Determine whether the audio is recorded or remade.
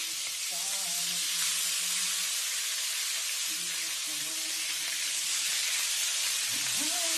remade